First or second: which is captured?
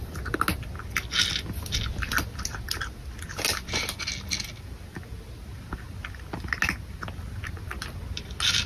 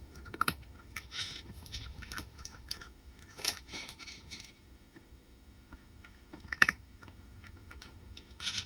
first